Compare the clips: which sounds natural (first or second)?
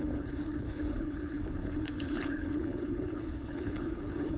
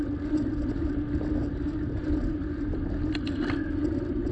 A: second